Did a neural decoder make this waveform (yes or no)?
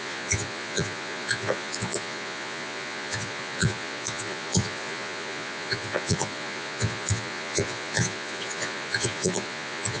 yes